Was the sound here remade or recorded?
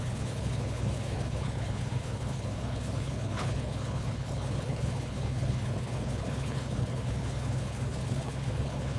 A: remade